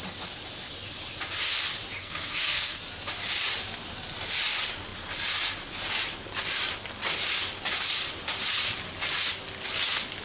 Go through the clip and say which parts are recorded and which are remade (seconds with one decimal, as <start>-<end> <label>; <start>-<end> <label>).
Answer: 0.0-2.0 recorded; 2.0-2.8 remade; 2.8-10.2 recorded